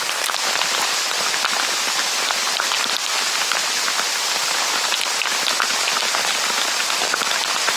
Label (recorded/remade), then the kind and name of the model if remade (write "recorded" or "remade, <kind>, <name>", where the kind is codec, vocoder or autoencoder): recorded